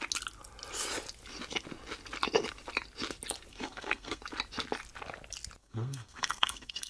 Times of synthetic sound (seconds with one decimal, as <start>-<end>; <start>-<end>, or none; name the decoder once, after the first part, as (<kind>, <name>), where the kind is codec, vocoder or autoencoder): 3.5-4.2 (codec, SNAC); 5.6-6.9